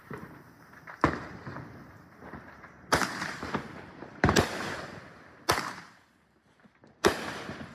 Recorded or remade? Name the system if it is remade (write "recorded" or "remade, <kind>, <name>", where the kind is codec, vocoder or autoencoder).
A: remade, vocoder, BigVGAN v2